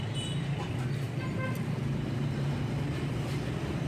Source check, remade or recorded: recorded